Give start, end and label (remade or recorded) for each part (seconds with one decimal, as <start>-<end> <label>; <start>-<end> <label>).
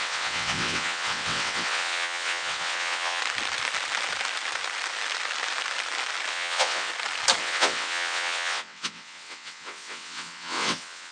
0.0-3.2 remade; 3.2-6.3 recorded; 6.3-6.9 remade; 6.9-7.4 recorded; 7.4-11.1 remade